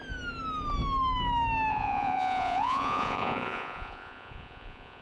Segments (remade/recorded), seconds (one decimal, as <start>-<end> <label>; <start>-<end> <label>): 0.0-1.7 recorded; 1.7-5.0 remade